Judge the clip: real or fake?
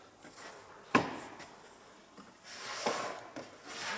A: real